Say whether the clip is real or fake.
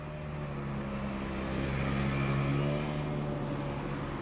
real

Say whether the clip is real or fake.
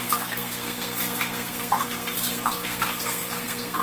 fake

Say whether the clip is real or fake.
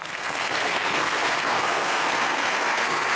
fake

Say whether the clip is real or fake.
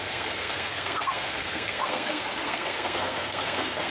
fake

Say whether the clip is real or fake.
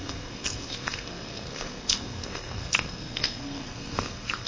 fake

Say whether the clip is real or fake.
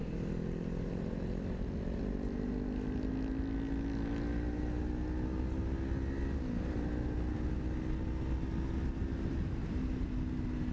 real